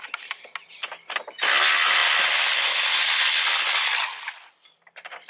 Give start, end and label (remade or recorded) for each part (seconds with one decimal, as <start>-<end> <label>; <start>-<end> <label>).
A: 0.0-5.3 recorded

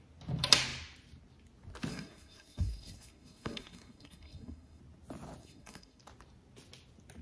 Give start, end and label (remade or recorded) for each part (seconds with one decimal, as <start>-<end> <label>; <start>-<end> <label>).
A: 0.0-1.9 recorded; 1.9-4.8 remade; 4.8-5.4 recorded; 5.4-6.0 remade; 6.0-7.2 recorded

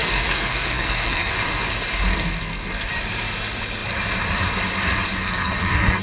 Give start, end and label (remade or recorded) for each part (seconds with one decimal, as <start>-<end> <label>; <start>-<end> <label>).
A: 0.0-1.3 remade; 1.3-2.1 recorded; 2.1-2.9 remade; 2.9-5.2 recorded; 5.2-6.0 remade

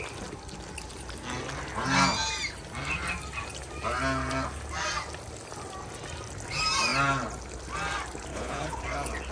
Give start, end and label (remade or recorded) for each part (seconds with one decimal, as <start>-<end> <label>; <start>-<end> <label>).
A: 0.0-8.3 recorded; 8.3-8.8 remade; 8.8-9.3 recorded

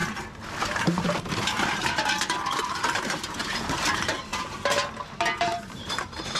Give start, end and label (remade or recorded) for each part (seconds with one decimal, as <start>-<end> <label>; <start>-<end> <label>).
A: 0.0-0.6 recorded; 0.6-4.3 remade; 4.3-5.4 recorded; 5.4-6.4 remade